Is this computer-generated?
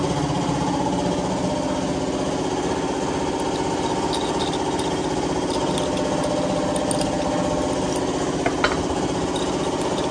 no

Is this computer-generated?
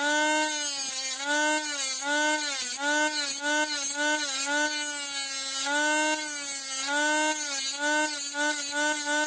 no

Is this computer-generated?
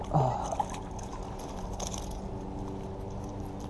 no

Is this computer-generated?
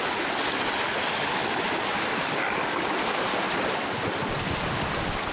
no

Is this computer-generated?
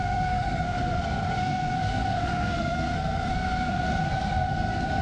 yes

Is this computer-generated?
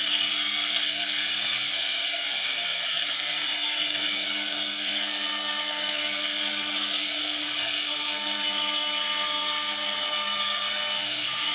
yes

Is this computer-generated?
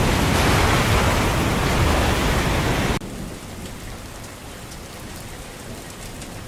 no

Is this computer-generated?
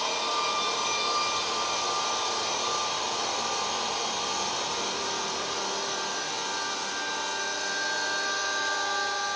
no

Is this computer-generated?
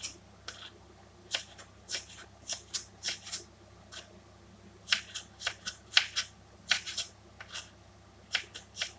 no